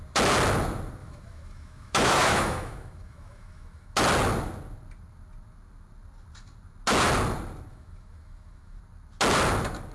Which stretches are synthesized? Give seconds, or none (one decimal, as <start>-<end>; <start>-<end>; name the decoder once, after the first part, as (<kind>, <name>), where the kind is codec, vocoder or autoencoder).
1.0-4.0 (autoencoder, DAC-VAE); 7.7-8.8